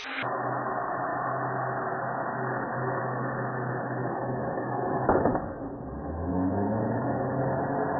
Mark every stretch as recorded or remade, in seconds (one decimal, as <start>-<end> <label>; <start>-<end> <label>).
0.0-4.0 recorded; 4.0-5.6 remade; 5.6-6.3 recorded; 6.3-7.4 remade; 7.4-8.0 recorded